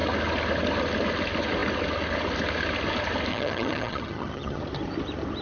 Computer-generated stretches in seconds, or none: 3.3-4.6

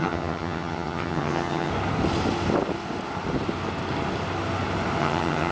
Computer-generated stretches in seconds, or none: 0.0-1.7; 5.0-5.5

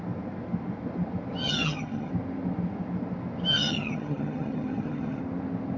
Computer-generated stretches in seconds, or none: 1.4-2.1; 3.5-5.2

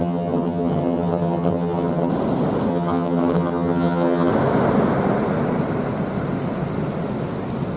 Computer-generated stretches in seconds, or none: 0.0-2.1; 2.7-4.3